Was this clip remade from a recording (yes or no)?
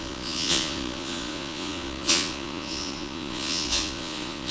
yes